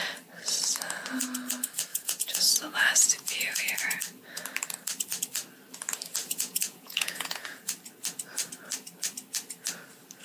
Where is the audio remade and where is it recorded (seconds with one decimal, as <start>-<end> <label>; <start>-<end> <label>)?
0.0-1.9 recorded; 1.9-3.7 remade; 3.7-6.2 recorded; 6.2-7.7 remade; 7.7-10.2 recorded